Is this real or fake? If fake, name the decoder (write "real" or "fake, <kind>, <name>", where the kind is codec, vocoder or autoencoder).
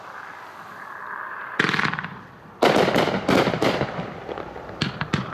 fake, vocoder, BigVGAN v2